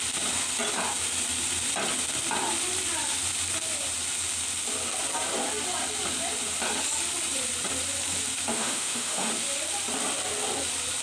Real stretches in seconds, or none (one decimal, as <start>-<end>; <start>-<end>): 0.0-8.5; 9.3-11.0

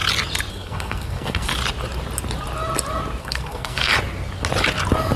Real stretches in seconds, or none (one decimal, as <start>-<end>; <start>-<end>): 0.0-0.5; 1.5-3.2; 3.9-5.2

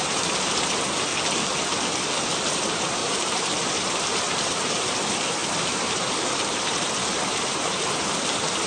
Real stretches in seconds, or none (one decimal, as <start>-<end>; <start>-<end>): 1.1-2.2